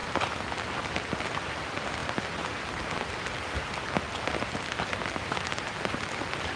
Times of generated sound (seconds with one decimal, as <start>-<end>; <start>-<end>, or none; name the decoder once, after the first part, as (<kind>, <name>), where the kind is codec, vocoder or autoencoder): none